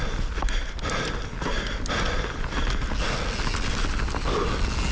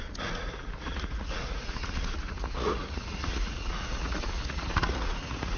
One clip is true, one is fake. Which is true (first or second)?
first